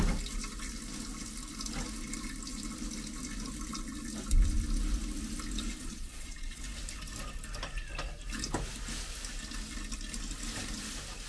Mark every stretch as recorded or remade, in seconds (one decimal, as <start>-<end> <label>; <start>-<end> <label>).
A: 0.0-5.9 recorded; 5.9-6.6 remade; 6.6-11.3 recorded

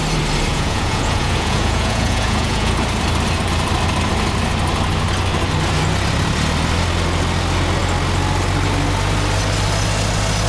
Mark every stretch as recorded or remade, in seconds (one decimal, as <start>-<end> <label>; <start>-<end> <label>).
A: 0.0-0.5 recorded; 0.5-2.7 remade; 2.7-10.5 recorded

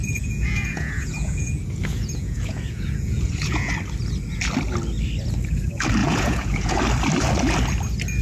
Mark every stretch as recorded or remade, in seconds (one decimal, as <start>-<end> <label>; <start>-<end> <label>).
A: 0.0-3.7 remade; 3.7-6.0 recorded; 6.0-6.8 remade; 6.8-8.2 recorded

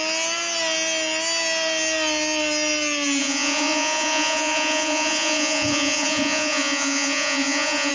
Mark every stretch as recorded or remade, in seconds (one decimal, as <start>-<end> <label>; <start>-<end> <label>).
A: 0.0-3.2 recorded; 3.2-7.9 remade

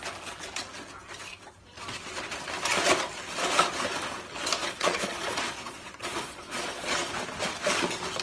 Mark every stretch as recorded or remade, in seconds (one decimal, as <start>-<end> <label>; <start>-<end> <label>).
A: 0.0-4.6 recorded; 4.6-7.1 remade; 7.1-8.2 recorded